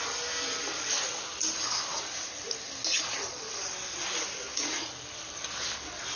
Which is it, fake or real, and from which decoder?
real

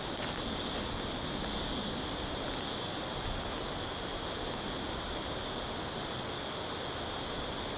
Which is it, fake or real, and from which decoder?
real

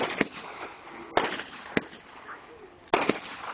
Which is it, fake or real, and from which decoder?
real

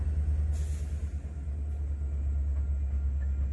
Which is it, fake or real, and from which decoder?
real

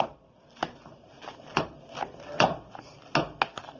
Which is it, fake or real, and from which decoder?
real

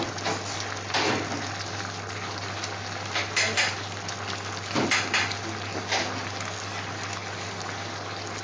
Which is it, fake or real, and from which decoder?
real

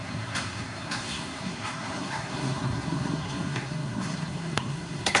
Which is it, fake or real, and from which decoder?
fake, codec, SNAC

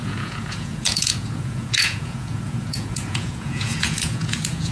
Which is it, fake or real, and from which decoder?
fake, vocoder, Vocos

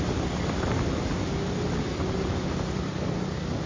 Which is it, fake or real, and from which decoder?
real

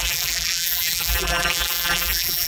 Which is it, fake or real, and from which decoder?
fake, vocoder, BigVGAN v2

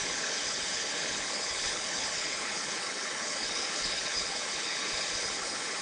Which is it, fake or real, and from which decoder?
fake, codec, HILCodec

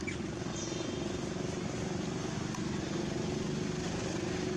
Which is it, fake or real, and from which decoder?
real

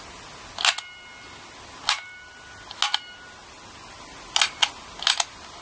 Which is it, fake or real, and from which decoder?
real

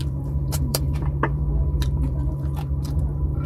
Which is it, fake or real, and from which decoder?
fake, vocoder, BigVGAN v2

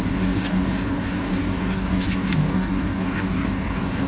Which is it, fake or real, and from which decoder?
fake, codec, DAC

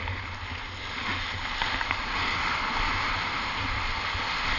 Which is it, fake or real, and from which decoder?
real